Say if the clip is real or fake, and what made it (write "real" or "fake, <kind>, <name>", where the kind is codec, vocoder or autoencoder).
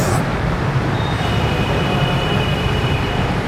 fake, vocoder, BigVGAN v2